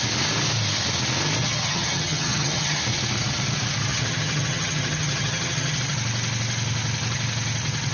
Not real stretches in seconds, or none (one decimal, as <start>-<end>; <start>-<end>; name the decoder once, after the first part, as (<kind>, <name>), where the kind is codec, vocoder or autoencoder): 1.4-2.8 (vocoder, HiFi-GAN); 3.9-5.8